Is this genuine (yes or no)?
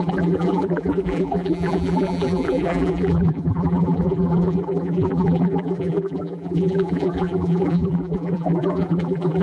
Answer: no